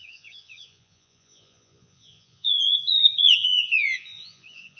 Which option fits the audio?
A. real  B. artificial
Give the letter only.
B